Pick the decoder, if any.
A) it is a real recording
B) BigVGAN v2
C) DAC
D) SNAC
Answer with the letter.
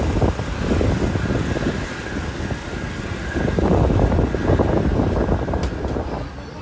A